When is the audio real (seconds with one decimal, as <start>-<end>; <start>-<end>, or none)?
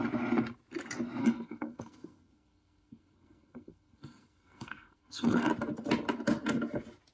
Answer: 0.0-1.2; 5.5-7.1